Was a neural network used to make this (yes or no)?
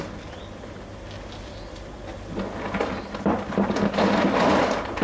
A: no